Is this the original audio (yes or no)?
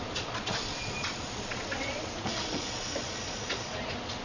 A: no